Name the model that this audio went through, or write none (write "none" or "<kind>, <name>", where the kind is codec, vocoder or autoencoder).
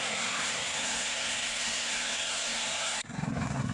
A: codec, SNAC